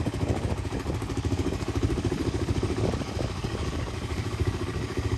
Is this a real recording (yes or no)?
no